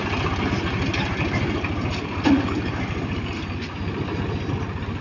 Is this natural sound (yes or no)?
yes